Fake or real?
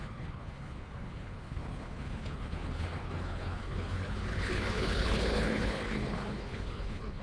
fake